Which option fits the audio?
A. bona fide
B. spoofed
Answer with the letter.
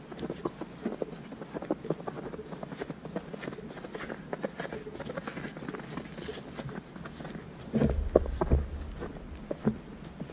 A